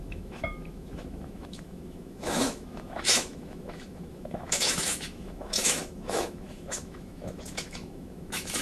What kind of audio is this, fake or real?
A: fake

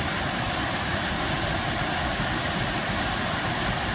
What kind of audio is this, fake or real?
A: real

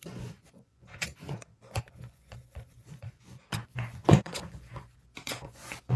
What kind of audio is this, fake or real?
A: fake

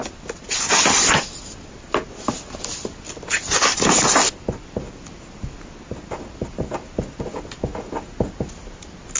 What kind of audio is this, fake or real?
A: real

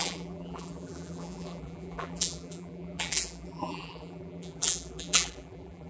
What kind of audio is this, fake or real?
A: fake